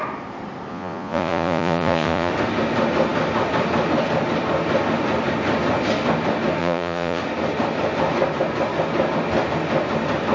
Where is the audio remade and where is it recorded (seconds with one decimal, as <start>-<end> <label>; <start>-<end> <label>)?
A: 0.0-0.7 recorded; 0.7-2.3 remade; 2.3-6.6 recorded; 6.6-7.2 remade; 7.2-10.3 recorded